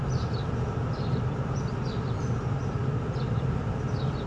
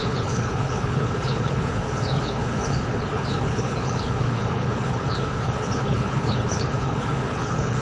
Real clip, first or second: first